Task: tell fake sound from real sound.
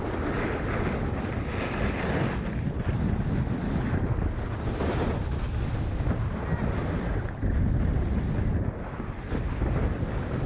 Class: real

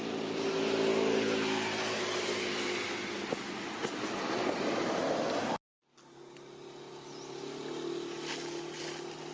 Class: real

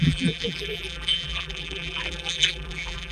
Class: fake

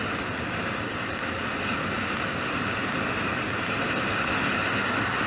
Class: real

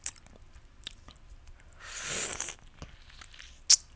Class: real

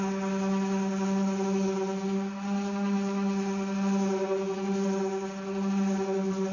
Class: real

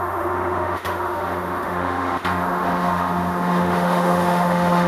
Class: fake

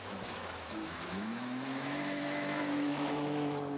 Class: fake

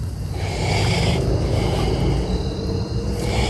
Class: real